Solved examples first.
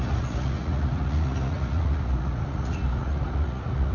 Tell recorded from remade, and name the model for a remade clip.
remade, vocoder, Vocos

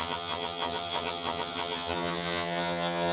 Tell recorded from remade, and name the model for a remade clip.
remade, vocoder, HiFi-GAN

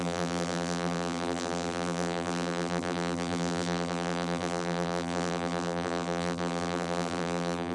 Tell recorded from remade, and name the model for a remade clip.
remade, vocoder, BigVGAN v2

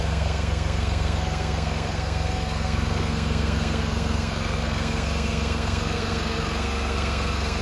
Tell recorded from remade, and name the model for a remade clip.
remade, codec, SNAC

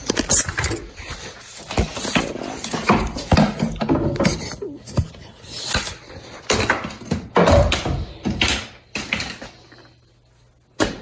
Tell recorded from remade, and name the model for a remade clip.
recorded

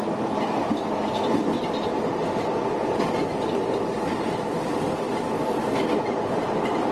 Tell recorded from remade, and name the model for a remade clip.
recorded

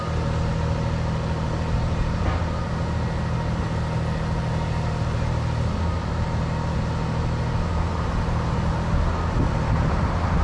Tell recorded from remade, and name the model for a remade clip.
recorded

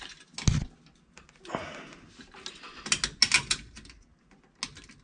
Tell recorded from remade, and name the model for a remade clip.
recorded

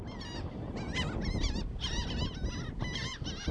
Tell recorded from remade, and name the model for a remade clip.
recorded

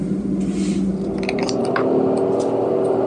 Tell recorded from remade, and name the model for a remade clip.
recorded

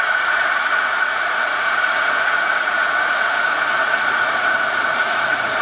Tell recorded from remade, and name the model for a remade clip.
remade, vocoder, Vocos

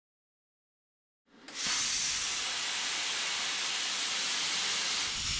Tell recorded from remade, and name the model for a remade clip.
recorded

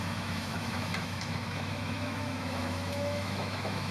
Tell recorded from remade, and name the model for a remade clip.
remade, autoencoder, DAC-VAE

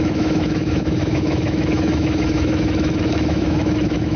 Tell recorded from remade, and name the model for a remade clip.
remade, autoencoder, DAC-VAE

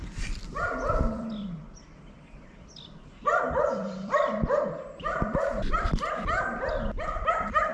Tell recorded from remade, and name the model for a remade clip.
remade, vocoder, BigVGAN v2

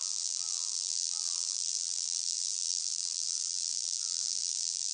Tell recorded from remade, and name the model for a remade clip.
remade, vocoder, BigVGAN v2